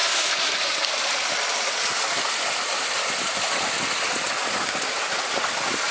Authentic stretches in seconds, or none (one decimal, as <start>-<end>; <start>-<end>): 0.0-5.9